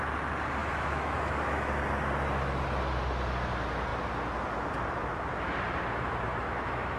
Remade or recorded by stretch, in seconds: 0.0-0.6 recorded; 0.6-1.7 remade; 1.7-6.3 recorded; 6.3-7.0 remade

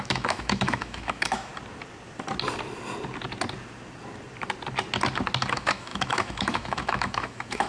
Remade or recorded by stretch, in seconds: 0.0-1.5 remade; 1.5-5.5 recorded; 5.5-7.7 remade